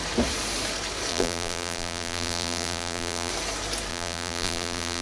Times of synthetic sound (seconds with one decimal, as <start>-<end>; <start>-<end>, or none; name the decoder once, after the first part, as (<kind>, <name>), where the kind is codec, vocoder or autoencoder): 1.1-3.3 (vocoder, BigVGAN v2); 3.9-5.0